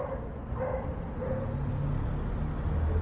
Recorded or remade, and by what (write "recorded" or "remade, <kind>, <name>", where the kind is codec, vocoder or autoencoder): recorded